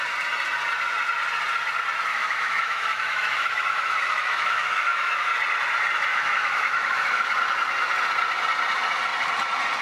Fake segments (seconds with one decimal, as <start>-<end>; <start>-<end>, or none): 2.1-5.3; 6.1-7.3